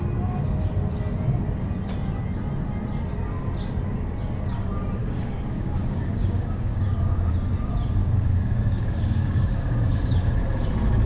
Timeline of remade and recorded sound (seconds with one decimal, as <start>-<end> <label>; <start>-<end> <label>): 0.0-5.0 recorded; 5.0-7.3 remade; 7.3-8.0 recorded; 8.0-10.0 remade; 10.0-11.1 recorded